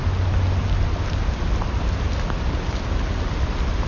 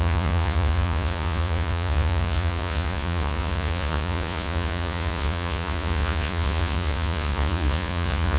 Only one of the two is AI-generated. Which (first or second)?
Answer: second